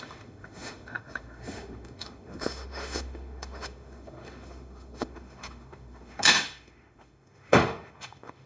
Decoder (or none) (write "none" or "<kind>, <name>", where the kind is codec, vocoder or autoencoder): autoencoder, DAC-VAE